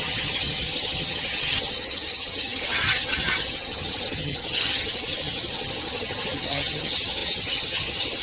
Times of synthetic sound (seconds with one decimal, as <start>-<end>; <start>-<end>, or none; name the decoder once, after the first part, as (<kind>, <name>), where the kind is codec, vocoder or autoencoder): 0.0-8.2 (vocoder, HiFi-GAN)